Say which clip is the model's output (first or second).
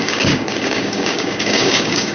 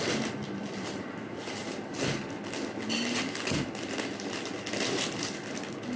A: first